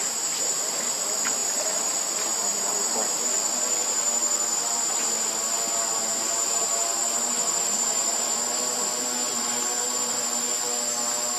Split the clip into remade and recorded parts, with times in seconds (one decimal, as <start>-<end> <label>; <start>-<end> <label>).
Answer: 0.0-11.4 recorded